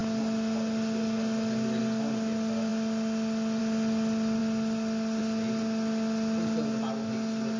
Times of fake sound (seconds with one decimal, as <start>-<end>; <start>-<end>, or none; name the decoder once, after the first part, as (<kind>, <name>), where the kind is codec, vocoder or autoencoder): none